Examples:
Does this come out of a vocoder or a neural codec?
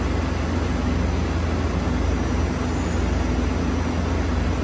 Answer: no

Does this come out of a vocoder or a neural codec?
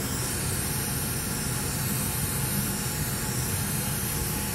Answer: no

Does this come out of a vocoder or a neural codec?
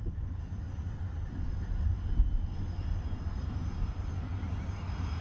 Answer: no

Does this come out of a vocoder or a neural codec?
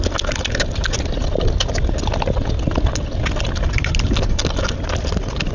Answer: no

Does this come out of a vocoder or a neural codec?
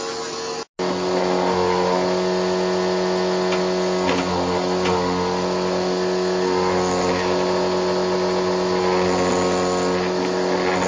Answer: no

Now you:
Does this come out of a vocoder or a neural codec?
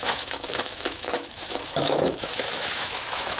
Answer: yes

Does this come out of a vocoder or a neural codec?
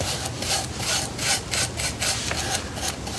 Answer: no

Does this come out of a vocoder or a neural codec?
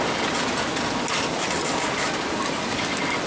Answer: no